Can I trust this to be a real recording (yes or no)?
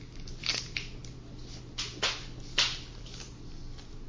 yes